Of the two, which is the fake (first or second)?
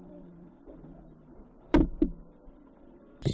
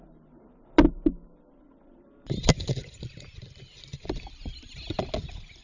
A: first